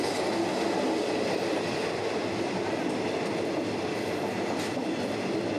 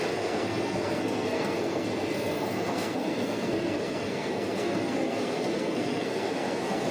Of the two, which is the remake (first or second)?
second